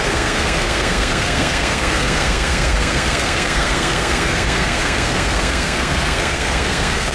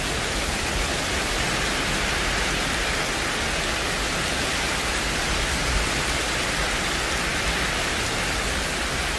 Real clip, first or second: second